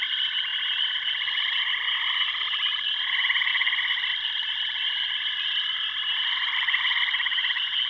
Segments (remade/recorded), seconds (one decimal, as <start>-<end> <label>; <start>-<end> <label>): 0.0-7.9 recorded